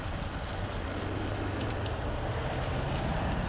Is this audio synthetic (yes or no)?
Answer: no